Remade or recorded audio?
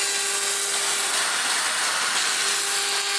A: recorded